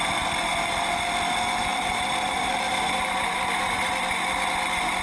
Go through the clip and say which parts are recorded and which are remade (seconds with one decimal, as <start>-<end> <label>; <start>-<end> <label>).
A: 0.0-1.7 recorded; 1.7-3.9 remade; 3.9-5.0 recorded